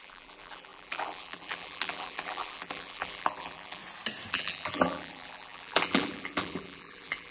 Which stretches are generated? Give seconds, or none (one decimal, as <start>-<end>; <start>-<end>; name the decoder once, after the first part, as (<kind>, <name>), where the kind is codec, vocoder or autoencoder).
0.0-3.8 (vocoder, BigVGAN v2); 4.3-7.3

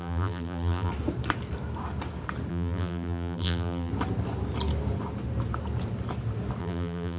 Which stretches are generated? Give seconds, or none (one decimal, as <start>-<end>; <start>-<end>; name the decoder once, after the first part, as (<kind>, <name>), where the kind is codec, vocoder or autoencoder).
0.0-0.9 (vocoder, BigVGAN v2); 2.5-3.9; 6.6-7.2